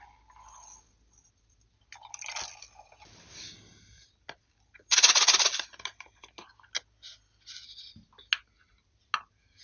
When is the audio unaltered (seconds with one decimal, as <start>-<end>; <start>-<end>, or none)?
0.0-9.6